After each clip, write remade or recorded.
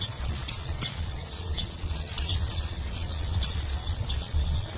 remade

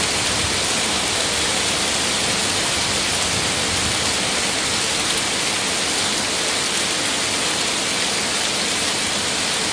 recorded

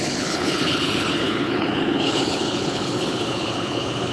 remade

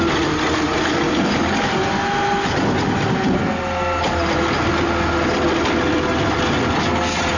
recorded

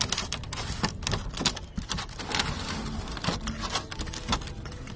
recorded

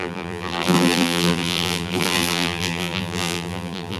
remade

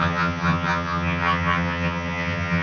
remade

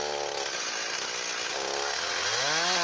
recorded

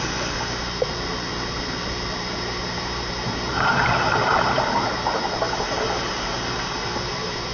remade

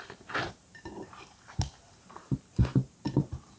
remade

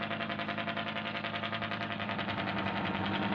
remade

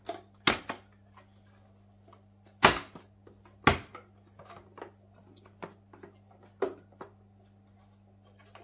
recorded